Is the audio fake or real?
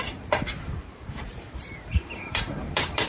fake